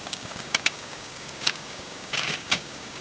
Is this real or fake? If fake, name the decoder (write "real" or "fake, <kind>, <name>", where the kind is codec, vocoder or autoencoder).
fake, codec, DAC